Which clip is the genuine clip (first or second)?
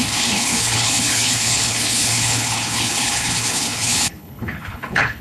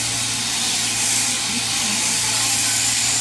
second